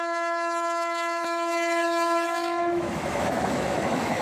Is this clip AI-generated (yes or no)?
yes